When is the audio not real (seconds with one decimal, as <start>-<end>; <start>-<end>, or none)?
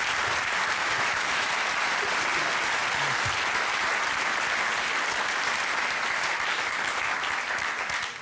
0.8-1.5